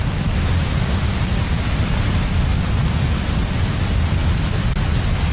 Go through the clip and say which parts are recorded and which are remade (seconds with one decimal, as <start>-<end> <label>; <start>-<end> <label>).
0.0-5.3 recorded